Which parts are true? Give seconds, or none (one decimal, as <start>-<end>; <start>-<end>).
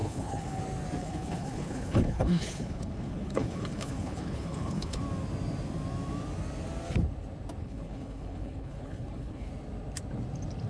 0.6-1.0; 5.0-7.6; 9.5-10.7